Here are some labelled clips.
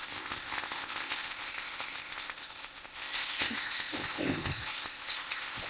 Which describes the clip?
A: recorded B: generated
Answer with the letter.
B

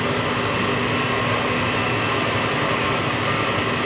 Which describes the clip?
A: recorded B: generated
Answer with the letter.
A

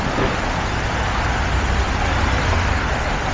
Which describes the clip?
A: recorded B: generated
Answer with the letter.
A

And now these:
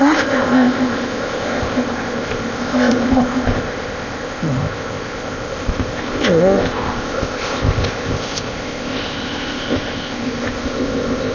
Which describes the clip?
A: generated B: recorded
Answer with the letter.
A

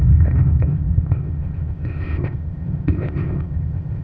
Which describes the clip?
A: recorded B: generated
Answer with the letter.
B